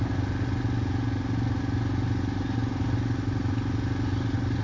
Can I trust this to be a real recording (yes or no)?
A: yes